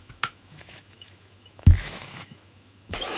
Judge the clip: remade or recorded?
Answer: remade